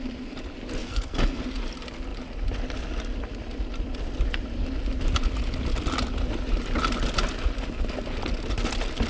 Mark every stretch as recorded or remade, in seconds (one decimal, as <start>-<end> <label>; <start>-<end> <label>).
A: 0.0-0.8 recorded; 0.8-1.4 remade; 1.4-9.1 recorded